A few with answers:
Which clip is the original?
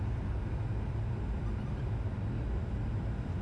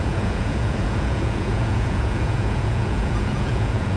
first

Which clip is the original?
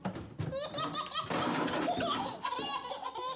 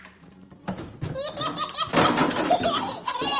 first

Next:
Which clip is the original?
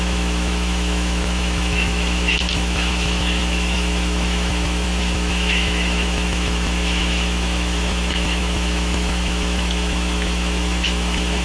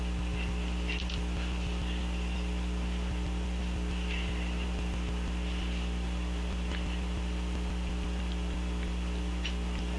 second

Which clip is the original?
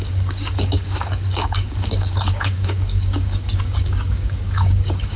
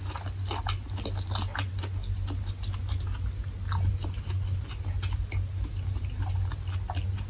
second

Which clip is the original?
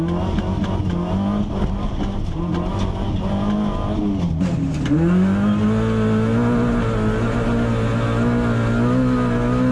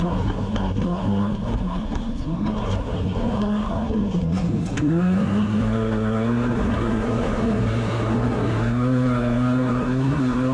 first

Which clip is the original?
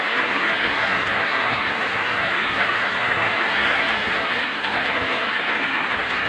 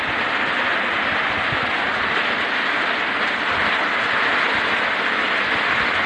second